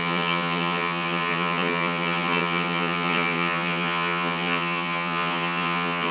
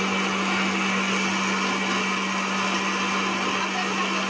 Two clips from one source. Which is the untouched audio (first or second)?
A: second